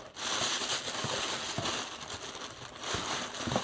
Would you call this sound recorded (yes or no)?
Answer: yes